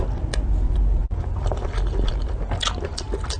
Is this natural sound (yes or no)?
yes